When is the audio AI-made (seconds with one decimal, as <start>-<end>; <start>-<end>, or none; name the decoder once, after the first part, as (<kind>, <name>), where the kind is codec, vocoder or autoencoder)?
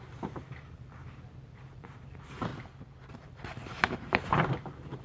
0.0-1.0 (vocoder, BigVGAN v2); 1.5-2.5; 3.1-5.0